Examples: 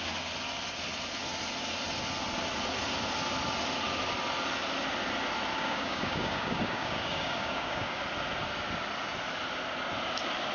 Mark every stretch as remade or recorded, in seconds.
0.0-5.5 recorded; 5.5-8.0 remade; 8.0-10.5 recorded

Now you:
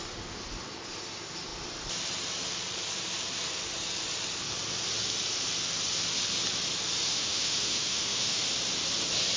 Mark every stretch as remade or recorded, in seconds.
0.0-7.1 recorded; 7.1-8.4 remade; 8.4-9.4 recorded

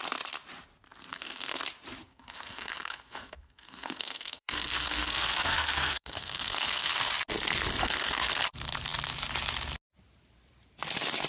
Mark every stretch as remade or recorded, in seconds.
0.0-1.1 recorded; 1.1-1.6 remade; 1.6-2.0 recorded; 2.0-7.1 remade; 7.1-7.8 recorded; 7.8-8.4 remade; 8.4-11.3 recorded